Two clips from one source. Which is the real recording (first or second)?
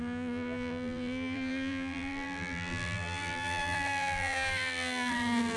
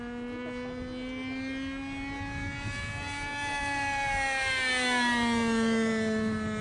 second